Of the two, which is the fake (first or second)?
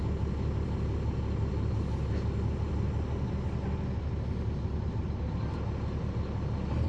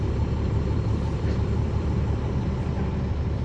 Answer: second